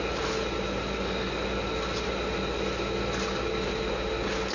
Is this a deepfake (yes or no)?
no